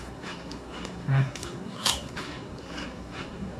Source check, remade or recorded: remade